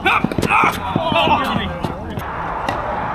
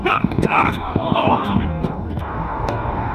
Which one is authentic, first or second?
first